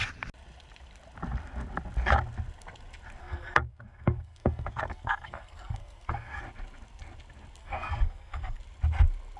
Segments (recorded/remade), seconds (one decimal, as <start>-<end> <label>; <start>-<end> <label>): 0.0-3.2 recorded; 3.2-6.4 remade; 6.4-7.6 recorded; 7.6-8.6 remade; 8.6-9.4 recorded